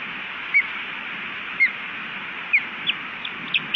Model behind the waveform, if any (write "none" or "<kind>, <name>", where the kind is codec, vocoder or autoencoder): none